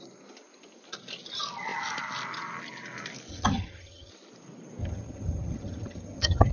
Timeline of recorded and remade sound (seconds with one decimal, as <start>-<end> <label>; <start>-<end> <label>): 0.0-3.3 recorded; 3.3-4.1 remade; 4.1-4.8 recorded; 4.8-6.5 remade